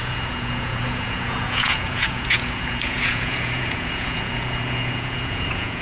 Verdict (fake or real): fake